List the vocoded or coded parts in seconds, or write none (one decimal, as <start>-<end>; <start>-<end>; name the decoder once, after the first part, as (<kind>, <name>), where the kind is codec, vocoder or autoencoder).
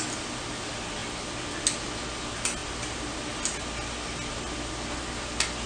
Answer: none